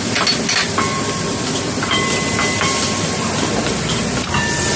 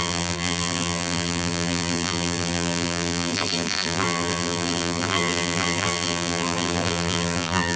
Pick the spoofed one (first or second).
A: second